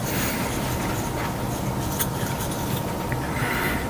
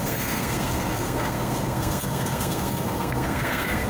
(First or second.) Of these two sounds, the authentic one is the first